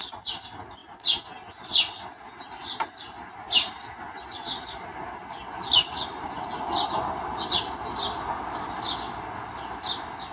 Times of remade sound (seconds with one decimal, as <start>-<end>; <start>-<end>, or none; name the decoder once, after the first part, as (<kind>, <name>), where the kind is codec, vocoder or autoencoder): none